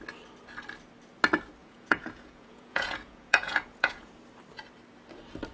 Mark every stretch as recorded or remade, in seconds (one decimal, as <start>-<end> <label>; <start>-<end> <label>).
0.0-1.6 recorded; 1.6-4.1 remade; 4.1-5.5 recorded